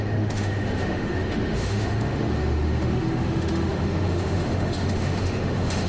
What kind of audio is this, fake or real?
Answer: fake